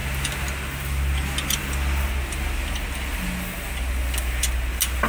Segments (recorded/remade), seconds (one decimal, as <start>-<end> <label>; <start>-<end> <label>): 0.0-5.1 recorded